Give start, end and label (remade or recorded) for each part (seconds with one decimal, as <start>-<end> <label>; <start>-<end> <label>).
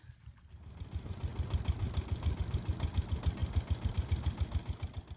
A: 0.0-5.2 recorded